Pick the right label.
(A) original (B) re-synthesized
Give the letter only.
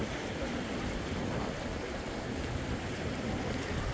A